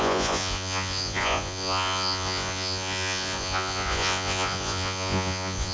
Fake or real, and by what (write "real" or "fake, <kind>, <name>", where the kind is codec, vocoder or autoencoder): fake, vocoder, Vocos